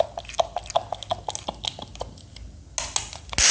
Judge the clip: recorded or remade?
recorded